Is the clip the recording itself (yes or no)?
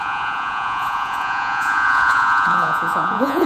no